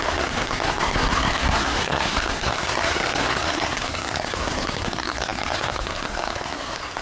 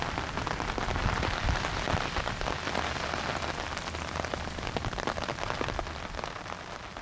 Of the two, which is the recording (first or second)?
second